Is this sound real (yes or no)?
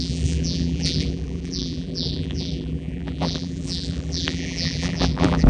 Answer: no